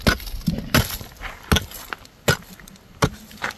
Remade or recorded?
recorded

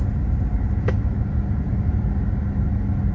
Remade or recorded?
recorded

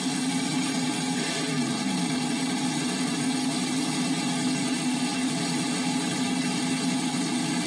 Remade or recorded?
recorded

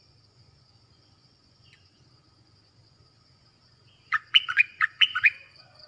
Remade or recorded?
remade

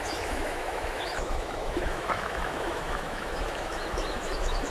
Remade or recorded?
remade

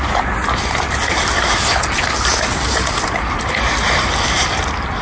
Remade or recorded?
recorded